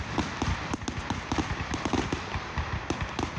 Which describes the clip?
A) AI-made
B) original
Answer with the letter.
B